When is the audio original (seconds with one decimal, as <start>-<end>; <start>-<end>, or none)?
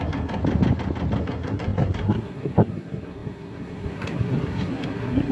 0.4-1.2